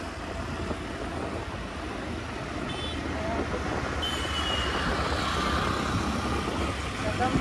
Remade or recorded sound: recorded